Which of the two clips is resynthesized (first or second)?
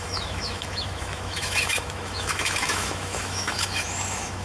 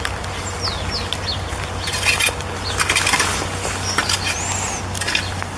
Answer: first